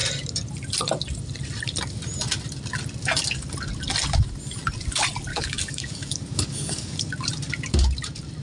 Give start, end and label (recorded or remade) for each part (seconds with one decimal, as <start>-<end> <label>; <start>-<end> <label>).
0.0-5.3 recorded; 5.3-7.1 remade; 7.1-8.4 recorded